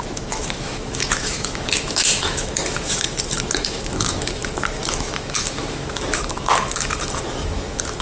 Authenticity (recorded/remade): remade